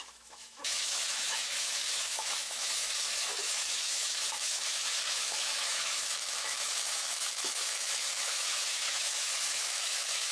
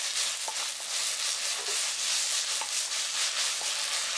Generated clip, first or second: first